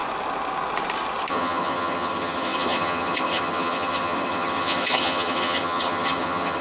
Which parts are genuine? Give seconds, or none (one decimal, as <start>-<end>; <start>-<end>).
0.0-1.3